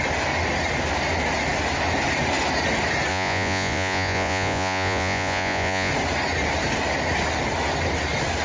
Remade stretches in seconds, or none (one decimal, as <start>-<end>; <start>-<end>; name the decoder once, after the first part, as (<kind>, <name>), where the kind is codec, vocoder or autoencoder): 3.1-5.9 (vocoder, Vocos)